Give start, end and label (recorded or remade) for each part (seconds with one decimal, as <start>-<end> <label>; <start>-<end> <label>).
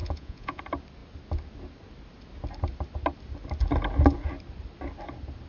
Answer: 0.0-0.6 remade; 0.6-5.5 recorded